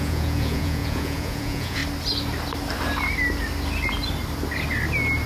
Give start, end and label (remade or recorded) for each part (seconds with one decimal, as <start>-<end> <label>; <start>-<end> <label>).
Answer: 0.0-1.8 remade; 1.8-5.3 recorded